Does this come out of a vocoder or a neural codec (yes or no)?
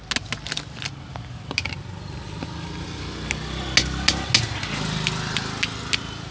no